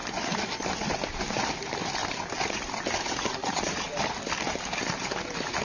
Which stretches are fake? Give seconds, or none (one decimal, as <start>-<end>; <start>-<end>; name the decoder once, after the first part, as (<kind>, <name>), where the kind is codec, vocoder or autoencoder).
3.4-4.0 (vocoder, Vocos)